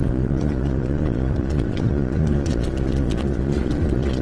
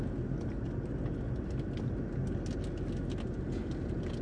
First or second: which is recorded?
second